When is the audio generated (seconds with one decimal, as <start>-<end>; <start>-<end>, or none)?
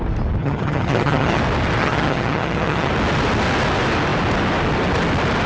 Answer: 0.4-1.4; 1.8-2.9